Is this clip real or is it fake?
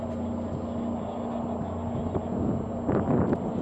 real